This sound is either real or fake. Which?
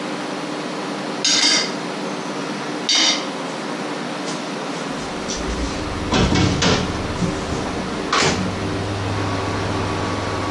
real